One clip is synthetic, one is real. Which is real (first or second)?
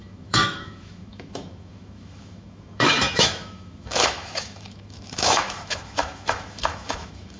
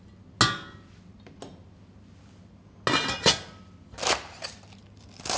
second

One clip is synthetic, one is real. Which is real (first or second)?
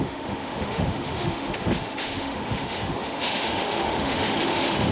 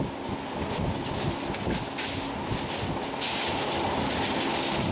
second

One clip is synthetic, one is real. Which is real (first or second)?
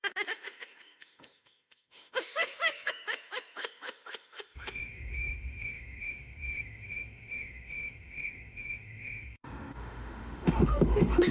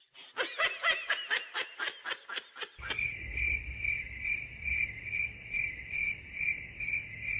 second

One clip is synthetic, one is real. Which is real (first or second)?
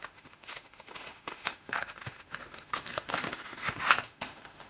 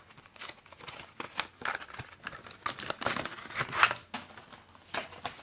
second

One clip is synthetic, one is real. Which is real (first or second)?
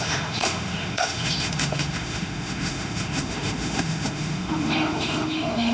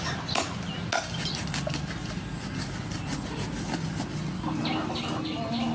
second